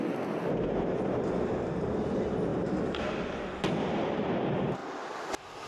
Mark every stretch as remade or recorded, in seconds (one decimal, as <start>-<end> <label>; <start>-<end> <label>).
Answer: 0.0-5.7 recorded